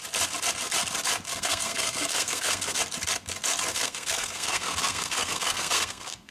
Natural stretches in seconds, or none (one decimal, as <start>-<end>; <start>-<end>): 0.0-1.3; 2.8-3.7

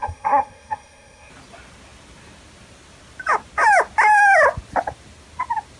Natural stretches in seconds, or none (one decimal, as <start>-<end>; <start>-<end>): 1.3-5.8

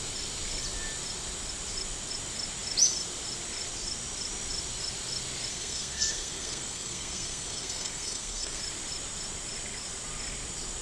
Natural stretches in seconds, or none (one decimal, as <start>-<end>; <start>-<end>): 0.0-5.5; 8.6-10.8

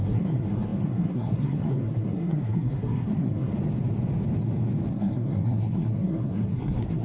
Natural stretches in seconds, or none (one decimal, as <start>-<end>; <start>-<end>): 3.5-4.9

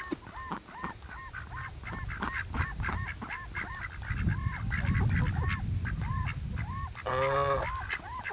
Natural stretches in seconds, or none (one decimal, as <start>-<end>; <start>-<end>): 0.0-8.3

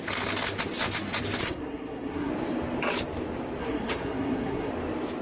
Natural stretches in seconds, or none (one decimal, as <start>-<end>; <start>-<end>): 0.0-1.4; 2.3-3.6; 4.7-5.2

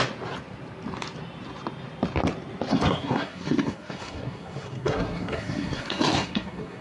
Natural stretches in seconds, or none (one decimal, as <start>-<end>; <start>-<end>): 0.0-2.7